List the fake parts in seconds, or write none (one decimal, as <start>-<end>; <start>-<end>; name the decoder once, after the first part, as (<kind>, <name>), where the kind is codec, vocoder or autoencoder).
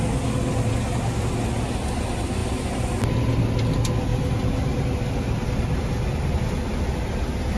none